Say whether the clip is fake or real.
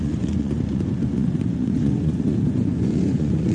fake